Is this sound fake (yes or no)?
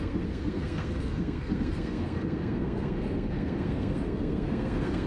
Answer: yes